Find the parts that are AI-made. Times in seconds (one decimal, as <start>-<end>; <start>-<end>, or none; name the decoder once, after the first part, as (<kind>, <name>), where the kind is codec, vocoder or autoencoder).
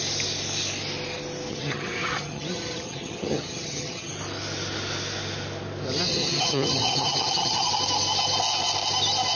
1.5-4.1 (vocoder, HiFi-GAN); 6.1-7.7